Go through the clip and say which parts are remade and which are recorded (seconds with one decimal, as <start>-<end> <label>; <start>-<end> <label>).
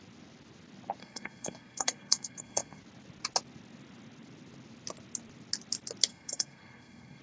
0.0-1.0 recorded; 1.0-2.8 remade; 2.8-6.1 recorded; 6.1-7.2 remade